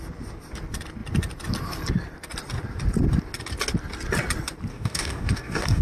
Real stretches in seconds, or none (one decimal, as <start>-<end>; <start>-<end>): 0.0-4.7